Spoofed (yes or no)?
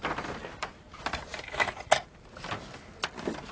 no